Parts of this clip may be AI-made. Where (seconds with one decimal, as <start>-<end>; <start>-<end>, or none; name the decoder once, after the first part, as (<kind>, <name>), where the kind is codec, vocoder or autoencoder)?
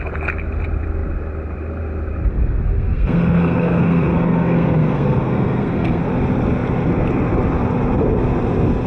2.3-6.0 (codec, SNAC)